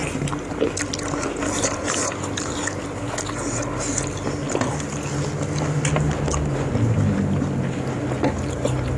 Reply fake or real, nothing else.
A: real